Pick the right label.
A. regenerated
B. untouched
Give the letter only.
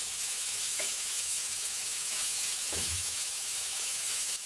A